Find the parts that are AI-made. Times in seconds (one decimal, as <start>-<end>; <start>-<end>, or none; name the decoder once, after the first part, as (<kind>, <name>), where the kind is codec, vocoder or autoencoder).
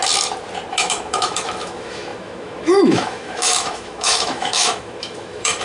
0.7-5.6 (autoencoder, DAC-VAE)